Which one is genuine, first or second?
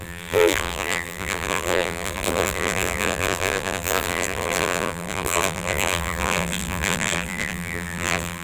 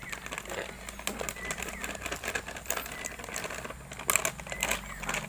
second